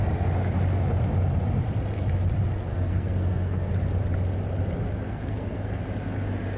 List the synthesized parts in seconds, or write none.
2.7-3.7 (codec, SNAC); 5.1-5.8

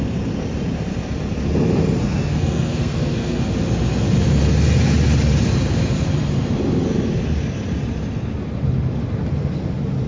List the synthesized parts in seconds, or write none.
2.0-3.4 (codec, SNAC)

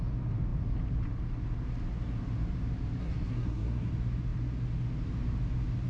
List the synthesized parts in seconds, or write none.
3.0-3.9 (codec, SNAC)

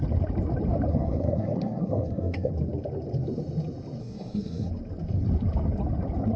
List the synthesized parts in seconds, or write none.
0.9-2.5 (codec, SNAC); 4.0-4.7